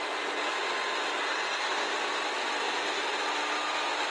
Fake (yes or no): no